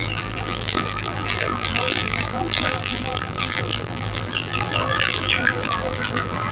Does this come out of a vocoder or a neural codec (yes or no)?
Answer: yes